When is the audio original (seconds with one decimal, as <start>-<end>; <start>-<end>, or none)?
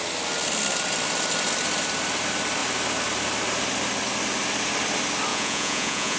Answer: 0.0-5.3